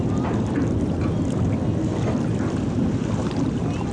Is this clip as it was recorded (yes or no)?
yes